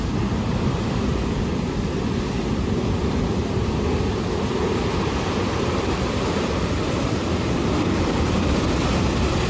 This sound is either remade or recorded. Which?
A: recorded